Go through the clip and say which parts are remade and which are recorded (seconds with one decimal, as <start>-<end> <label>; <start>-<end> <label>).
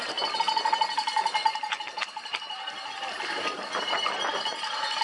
0.0-1.4 recorded; 1.4-4.0 remade; 4.0-5.0 recorded